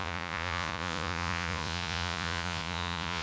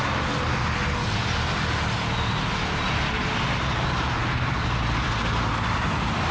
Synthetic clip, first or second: first